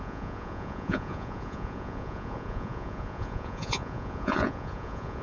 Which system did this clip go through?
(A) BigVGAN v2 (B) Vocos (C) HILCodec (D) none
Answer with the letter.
B